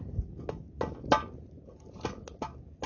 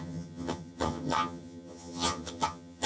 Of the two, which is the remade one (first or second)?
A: second